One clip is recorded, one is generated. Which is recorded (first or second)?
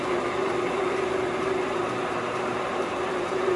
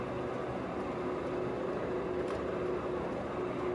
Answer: second